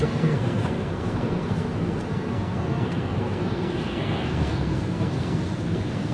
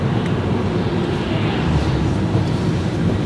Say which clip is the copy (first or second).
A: first